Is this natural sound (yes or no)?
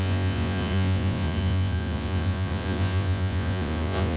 no